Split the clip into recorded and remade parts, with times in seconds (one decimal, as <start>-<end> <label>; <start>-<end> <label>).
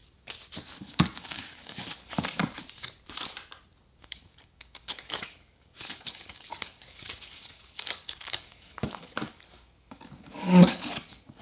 0.0-0.6 recorded; 0.6-2.4 remade; 2.4-4.0 recorded; 4.0-11.4 remade